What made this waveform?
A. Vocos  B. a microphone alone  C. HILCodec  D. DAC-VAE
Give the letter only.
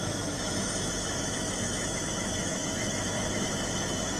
D